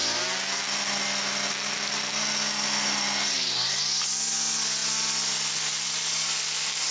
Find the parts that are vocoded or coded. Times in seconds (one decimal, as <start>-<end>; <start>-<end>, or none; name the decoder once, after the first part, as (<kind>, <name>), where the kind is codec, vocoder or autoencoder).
none